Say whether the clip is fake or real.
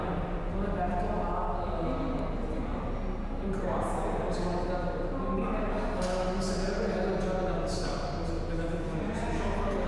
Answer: real